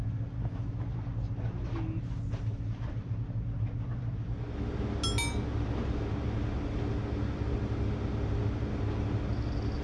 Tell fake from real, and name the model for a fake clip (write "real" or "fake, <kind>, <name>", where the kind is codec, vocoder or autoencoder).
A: real